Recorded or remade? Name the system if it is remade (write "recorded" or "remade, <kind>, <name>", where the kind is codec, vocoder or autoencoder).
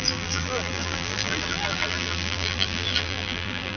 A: remade, vocoder, BigVGAN v2